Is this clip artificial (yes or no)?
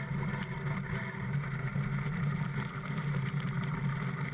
no